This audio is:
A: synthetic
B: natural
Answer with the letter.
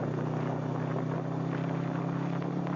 B